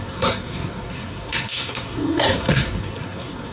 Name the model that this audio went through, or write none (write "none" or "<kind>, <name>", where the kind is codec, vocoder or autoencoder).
codec, SNAC